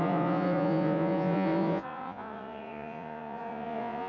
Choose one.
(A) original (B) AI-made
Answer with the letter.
B